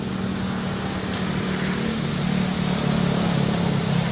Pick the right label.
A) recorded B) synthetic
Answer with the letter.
A